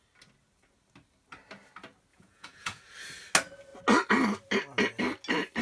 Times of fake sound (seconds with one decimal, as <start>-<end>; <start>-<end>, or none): 2.1-2.8